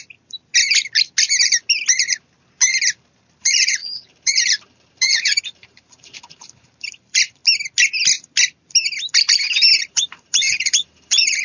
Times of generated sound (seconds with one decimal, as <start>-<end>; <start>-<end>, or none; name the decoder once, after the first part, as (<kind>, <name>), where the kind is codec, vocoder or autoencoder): 0.0-0.5 (vocoder, BigVGAN v2); 3.4-7.4; 9.8-11.4